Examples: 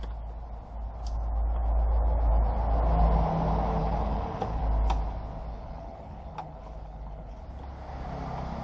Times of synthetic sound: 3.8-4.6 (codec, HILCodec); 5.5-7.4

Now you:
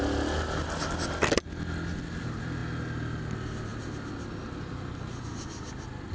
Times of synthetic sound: none

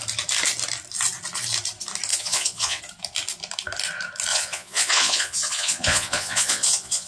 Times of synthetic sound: 2.1-2.8 (vocoder, Vocos); 4.3-7.1

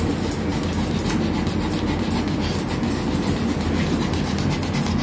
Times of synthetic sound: none

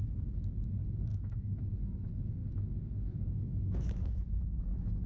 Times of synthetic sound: 1.1-1.7 (autoencoder, DAC-VAE); 2.4-4.6

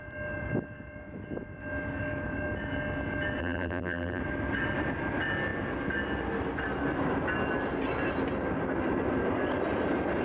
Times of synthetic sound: 3.4-4.2 (vocoder, BigVGAN v2)